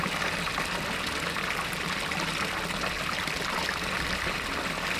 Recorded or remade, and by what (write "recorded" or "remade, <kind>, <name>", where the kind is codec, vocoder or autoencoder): recorded